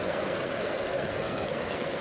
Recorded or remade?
remade